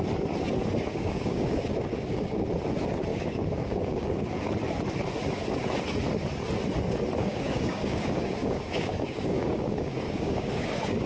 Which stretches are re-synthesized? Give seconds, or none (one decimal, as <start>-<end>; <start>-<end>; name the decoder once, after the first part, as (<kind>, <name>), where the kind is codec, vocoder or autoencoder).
0.9-2.5 (codec, DAC); 3.1-4.5; 7.2-11.1